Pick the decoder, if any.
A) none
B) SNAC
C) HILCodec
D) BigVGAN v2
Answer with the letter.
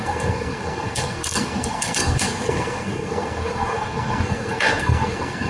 B